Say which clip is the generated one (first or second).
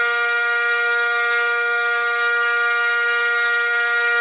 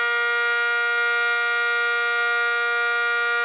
first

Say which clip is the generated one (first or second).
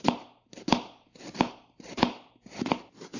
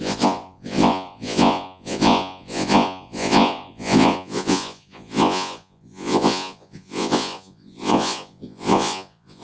second